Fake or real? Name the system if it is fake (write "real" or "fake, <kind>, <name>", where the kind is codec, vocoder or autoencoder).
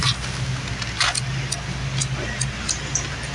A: real